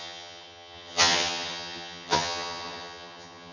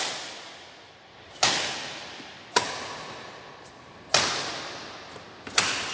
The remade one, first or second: first